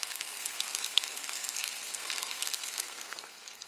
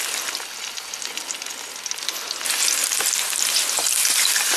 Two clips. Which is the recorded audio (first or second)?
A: second